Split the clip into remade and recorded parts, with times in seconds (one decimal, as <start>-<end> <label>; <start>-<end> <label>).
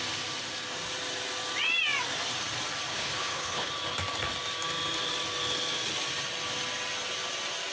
0.0-2.9 recorded; 2.9-3.7 remade; 3.7-7.7 recorded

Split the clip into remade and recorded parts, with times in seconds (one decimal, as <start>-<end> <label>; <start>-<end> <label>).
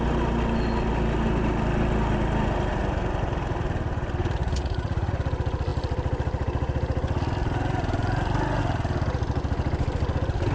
0.0-4.4 recorded; 4.4-5.1 remade; 5.1-10.5 recorded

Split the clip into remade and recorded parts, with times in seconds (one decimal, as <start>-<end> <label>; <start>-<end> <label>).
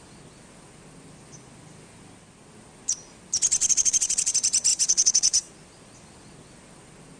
0.0-3.6 recorded; 3.6-4.3 remade; 4.3-4.7 recorded; 4.7-5.5 remade; 5.5-7.2 recorded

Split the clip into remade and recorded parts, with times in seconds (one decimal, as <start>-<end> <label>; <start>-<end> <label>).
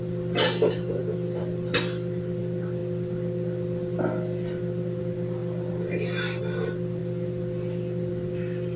0.0-8.8 recorded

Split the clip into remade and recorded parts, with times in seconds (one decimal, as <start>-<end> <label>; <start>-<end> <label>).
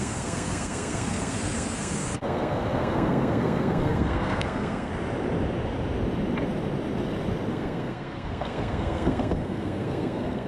0.0-4.9 remade; 4.9-7.5 recorded; 7.5-10.5 remade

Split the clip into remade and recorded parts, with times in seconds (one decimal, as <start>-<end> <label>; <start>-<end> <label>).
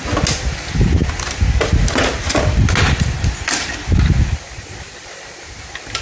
0.0-6.0 recorded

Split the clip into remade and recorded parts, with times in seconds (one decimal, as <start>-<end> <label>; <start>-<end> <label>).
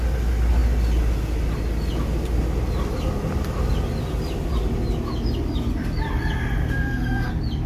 0.0-6.6 recorded; 6.6-7.3 remade; 7.3-7.7 recorded